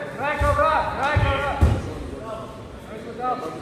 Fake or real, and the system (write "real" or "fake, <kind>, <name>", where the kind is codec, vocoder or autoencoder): real